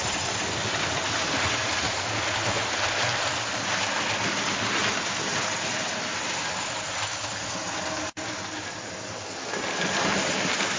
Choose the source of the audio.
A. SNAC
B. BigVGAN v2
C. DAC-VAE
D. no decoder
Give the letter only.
D